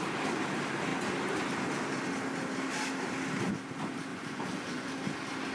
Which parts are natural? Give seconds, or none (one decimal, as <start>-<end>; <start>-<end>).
0.0-4.1; 4.9-5.5